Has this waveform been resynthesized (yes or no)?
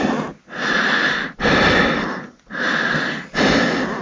no